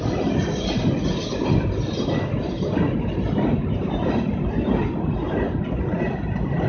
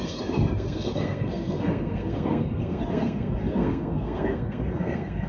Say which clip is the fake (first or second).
second